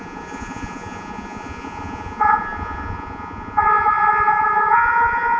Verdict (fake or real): fake